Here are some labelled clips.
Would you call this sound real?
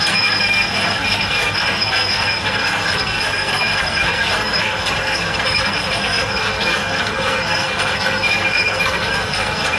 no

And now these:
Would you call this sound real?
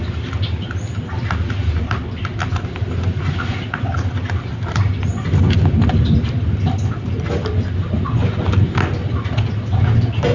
yes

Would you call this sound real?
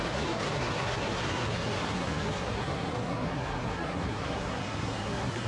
no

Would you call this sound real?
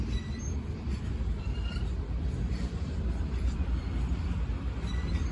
no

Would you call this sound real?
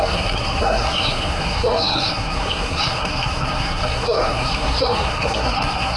no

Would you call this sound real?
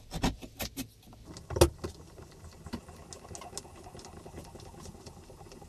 yes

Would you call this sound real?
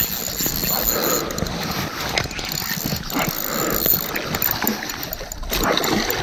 yes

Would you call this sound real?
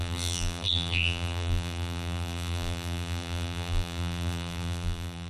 no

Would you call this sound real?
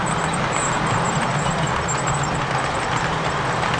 yes